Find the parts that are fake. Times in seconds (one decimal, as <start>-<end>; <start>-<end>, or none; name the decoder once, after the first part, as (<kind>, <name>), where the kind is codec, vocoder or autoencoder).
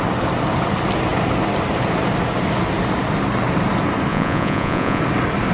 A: 4.1-5.0 (vocoder, Vocos)